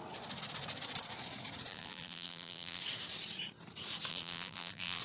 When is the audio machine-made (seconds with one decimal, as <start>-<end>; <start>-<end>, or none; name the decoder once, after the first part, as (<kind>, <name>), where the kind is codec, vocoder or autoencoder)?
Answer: 1.7-2.8 (vocoder, BigVGAN v2); 4.1-5.0